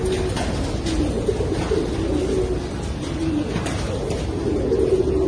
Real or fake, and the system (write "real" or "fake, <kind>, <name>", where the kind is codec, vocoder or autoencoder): real